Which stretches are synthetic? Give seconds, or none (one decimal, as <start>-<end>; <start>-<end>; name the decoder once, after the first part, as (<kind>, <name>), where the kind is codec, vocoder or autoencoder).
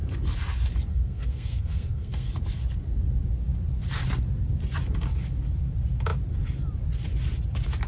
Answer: 0.9-2.3 (codec, SNAC)